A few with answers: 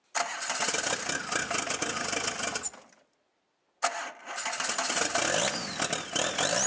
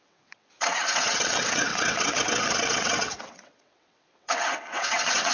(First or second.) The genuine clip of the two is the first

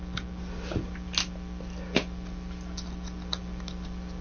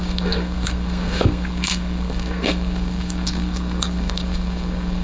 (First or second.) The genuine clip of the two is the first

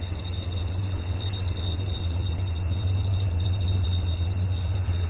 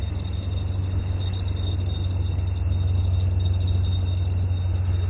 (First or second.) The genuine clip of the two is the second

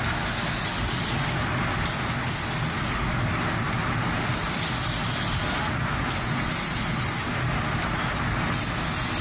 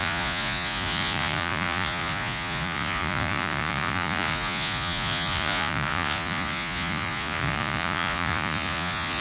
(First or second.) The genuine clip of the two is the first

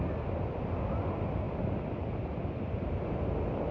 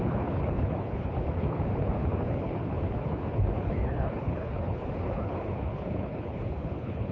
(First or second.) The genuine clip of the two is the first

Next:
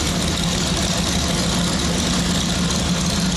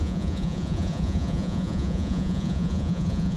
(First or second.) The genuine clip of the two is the first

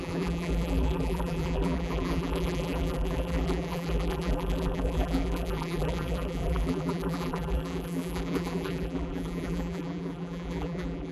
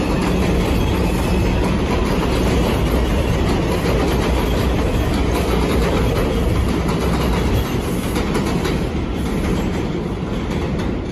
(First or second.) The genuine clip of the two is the second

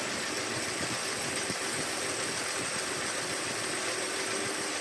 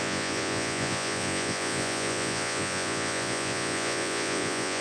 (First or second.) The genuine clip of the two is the first